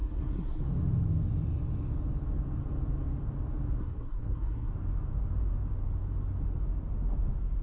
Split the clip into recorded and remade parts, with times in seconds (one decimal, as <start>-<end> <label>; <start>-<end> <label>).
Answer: 0.0-0.6 remade; 0.6-3.8 recorded; 3.8-4.7 remade; 4.7-7.6 recorded